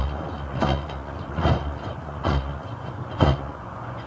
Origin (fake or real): fake